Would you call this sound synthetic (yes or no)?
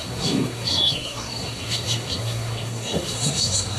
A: yes